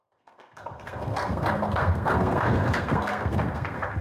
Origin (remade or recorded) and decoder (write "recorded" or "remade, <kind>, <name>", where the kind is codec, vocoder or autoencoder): remade, codec, SNAC